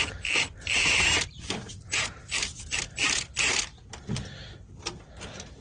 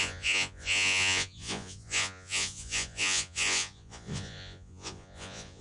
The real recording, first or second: first